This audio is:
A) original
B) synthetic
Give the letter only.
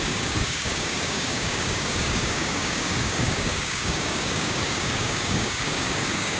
B